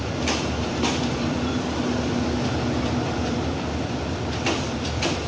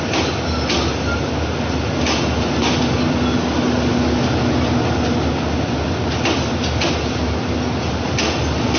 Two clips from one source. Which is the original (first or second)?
second